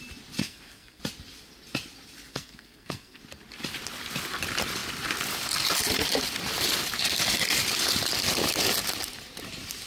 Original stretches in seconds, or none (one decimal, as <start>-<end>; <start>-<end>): 0.0-0.4; 1.0-2.3; 3.2-9.9